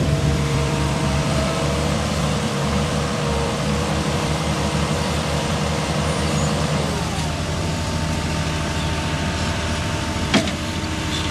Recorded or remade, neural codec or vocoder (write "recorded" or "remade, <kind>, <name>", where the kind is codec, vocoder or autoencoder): remade, vocoder, BigVGAN v2